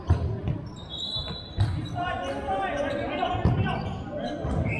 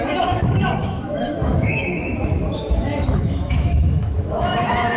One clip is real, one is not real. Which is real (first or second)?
first